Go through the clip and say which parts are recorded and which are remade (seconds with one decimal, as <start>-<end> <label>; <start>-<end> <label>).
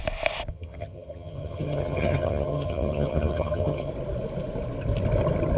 0.0-0.5 recorded; 0.5-3.9 remade; 3.9-5.6 recorded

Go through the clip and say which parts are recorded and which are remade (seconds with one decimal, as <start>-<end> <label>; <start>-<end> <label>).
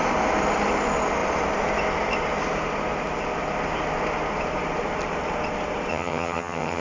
0.0-5.9 recorded; 5.9-6.8 remade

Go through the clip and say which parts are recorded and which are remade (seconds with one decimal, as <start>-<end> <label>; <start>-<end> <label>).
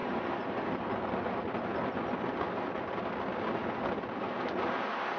0.0-5.2 recorded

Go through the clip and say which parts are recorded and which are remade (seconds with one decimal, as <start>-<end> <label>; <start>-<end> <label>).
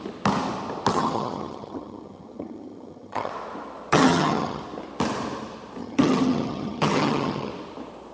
0.0-0.9 recorded; 0.9-3.3 remade; 3.3-3.9 recorded; 3.9-4.6 remade; 4.6-5.8 recorded; 5.8-7.5 remade; 7.5-8.1 recorded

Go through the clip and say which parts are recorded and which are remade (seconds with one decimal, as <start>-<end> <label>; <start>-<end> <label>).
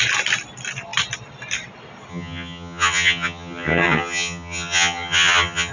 0.0-2.1 recorded; 2.1-5.7 remade